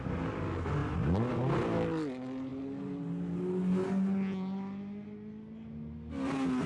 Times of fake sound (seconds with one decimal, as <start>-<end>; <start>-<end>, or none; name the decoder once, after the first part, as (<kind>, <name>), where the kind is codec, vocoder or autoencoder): none